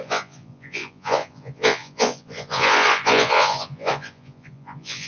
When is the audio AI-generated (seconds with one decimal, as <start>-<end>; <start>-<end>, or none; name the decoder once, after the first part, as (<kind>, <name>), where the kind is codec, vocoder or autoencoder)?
0.0-5.1 (vocoder, Vocos)